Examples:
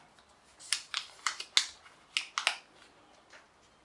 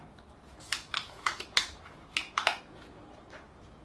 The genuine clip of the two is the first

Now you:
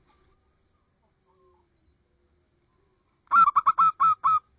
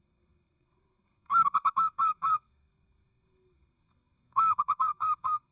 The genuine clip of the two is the first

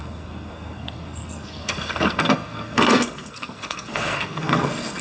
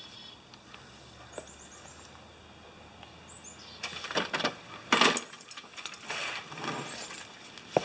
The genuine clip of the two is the second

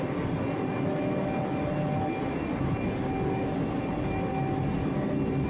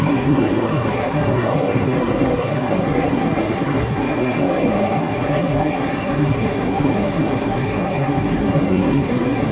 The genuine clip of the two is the first